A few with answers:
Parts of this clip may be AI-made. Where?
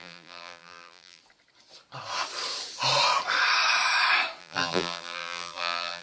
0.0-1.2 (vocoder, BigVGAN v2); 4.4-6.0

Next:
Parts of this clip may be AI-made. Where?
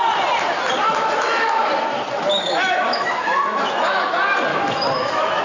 0.8-1.7 (autoencoder, DAC-VAE); 2.3-4.1; 4.5-5.4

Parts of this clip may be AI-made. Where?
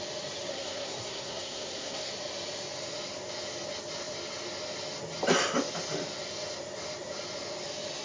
0.5-2.1 (codec, SNAC)